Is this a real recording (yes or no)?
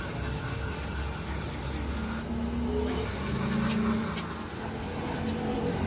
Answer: yes